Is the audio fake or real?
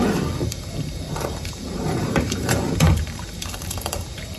fake